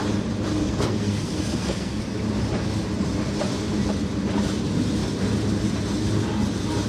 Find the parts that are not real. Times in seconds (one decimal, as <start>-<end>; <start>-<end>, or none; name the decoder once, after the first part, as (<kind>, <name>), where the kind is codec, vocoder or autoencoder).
0.6-2.0 (codec, SNAC)

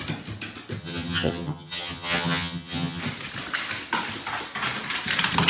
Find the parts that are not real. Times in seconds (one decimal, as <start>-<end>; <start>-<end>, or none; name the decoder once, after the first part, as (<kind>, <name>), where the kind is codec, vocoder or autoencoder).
0.8-3.0 (vocoder, HiFi-GAN)

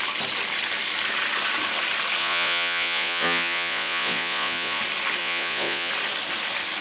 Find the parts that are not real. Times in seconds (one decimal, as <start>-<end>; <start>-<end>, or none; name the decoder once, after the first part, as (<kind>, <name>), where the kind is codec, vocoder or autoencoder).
2.2-4.8 (vocoder, Vocos); 5.2-5.9

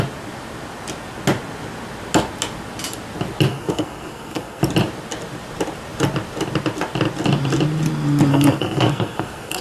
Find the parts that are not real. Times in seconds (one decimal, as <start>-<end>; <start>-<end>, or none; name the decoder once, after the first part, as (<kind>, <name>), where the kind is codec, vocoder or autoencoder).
3.5-4.6 (codec, SNAC); 8.3-9.6